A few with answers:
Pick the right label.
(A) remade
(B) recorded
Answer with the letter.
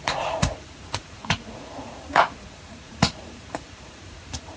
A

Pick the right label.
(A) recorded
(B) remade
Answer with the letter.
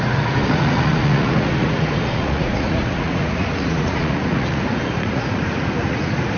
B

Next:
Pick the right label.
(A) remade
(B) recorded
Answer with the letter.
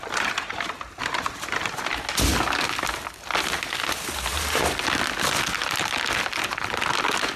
B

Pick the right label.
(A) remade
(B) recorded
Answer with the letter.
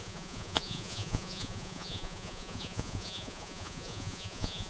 A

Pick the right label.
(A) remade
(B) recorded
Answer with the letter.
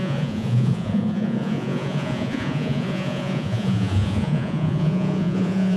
A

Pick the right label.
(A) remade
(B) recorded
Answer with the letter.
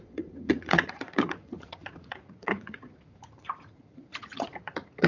A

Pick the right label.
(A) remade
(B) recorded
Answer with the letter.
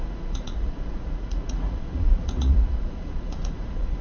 A